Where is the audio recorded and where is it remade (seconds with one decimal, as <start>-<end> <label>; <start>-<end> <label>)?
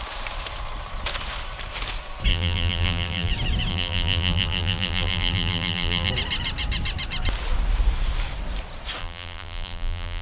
0.0-2.3 recorded; 2.3-3.3 remade; 3.3-3.7 recorded; 3.7-6.1 remade; 6.1-9.0 recorded; 9.0-10.2 remade